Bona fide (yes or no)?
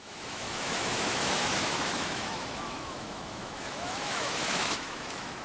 no